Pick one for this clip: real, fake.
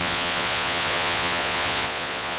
fake